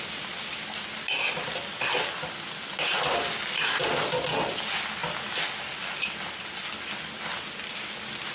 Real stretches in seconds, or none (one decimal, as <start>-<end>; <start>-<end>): 0.0-8.3

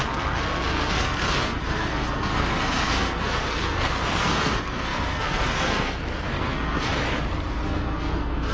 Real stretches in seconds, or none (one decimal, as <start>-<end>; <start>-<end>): 6.9-7.5